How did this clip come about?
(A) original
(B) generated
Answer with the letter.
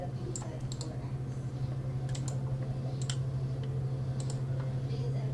A